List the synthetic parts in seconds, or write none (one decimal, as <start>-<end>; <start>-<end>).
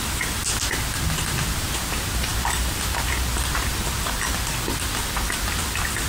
none